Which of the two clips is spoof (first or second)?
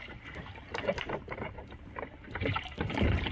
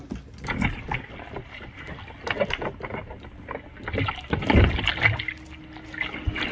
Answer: first